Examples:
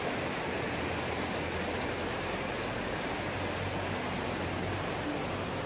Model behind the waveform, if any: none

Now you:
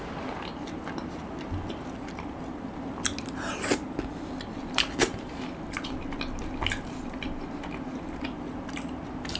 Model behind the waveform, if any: none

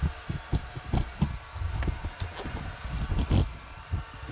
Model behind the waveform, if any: none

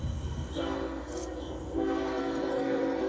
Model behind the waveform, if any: codec, SNAC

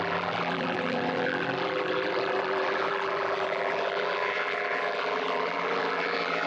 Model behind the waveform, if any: vocoder, BigVGAN v2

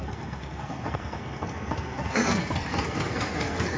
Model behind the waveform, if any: codec, SNAC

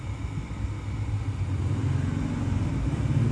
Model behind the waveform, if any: none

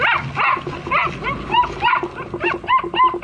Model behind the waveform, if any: none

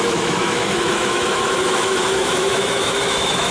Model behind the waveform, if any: autoencoder, DAC-VAE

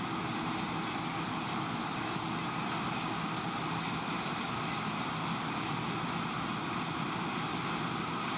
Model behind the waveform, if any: none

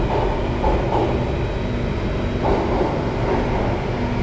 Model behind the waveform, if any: none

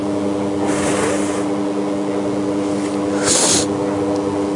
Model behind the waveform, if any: none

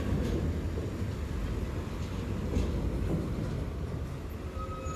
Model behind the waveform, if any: none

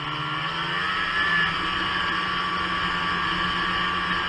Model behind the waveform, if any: none